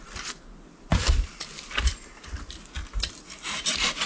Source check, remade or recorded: recorded